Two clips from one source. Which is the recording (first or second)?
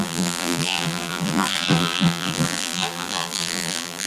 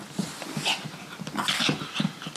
second